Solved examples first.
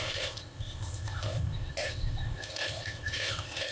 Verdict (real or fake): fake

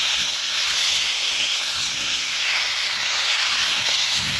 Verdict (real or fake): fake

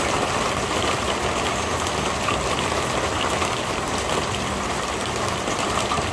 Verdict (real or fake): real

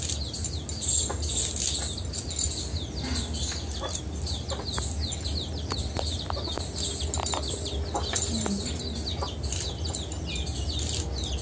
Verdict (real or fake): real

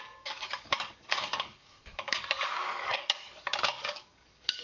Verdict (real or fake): fake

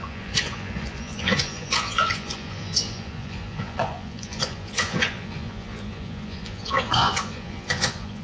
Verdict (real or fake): fake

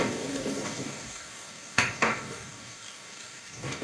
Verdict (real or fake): fake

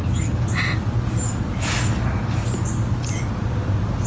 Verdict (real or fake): real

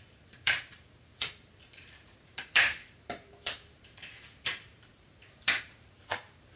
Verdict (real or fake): fake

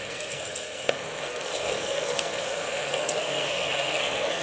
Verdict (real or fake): fake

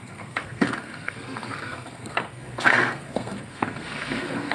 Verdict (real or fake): fake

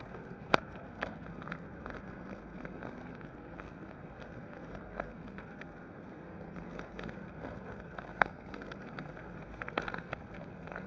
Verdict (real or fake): fake